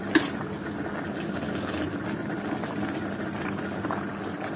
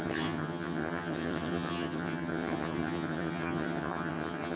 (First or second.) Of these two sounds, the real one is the first